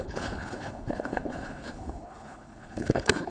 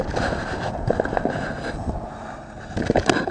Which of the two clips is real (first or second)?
second